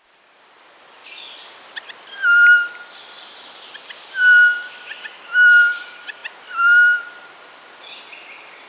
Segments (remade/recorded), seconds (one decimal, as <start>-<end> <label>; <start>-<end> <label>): 0.0-8.7 recorded